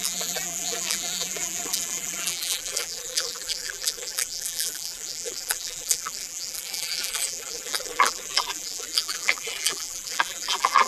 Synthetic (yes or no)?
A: yes